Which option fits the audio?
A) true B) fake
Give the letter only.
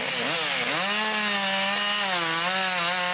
A